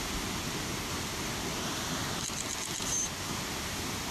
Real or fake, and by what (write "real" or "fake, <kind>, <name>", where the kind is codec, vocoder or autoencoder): real